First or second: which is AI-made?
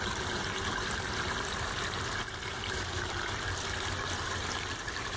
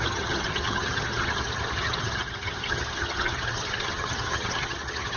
second